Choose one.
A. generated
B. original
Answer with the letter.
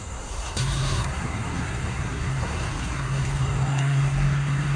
A